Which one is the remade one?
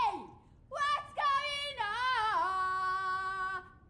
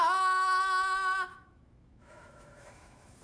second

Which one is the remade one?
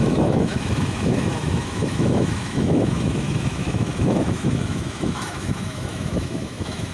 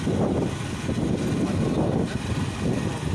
first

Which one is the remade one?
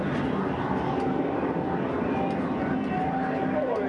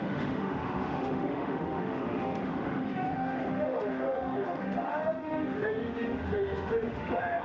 second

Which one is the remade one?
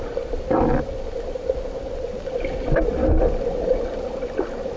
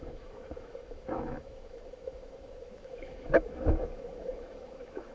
second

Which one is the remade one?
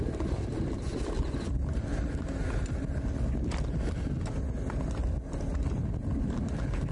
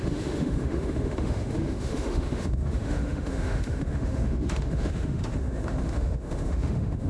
second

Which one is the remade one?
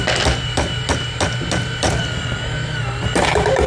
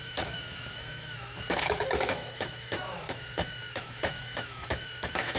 second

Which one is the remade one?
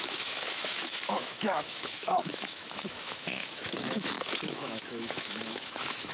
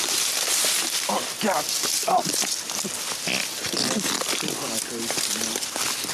first